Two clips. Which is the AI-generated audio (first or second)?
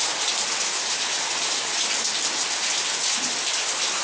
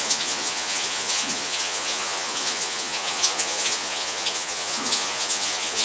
second